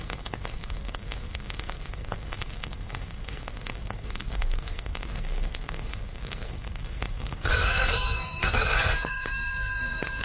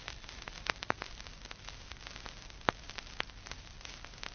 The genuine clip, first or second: second